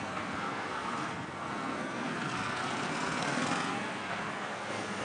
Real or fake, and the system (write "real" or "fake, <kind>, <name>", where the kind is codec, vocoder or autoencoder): fake, codec, SNAC